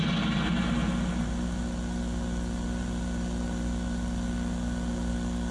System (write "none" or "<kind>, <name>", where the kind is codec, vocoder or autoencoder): none